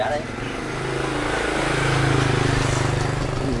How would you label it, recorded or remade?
recorded